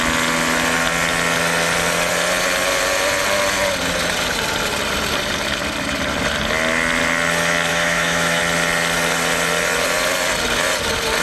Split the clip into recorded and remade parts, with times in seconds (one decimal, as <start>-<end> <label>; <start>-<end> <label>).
0.0-7.7 recorded; 7.7-8.4 remade; 8.4-11.2 recorded